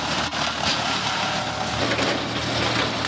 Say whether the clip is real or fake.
real